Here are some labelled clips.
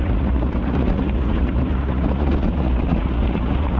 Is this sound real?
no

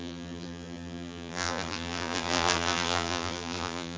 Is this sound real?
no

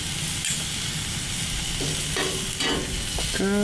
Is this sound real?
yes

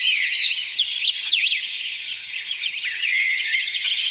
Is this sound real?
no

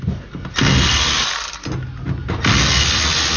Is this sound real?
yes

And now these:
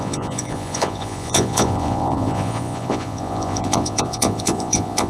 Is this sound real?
no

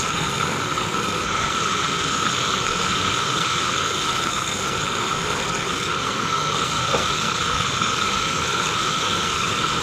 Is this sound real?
no